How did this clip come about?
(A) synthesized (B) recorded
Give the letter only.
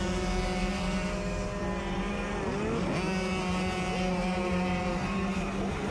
B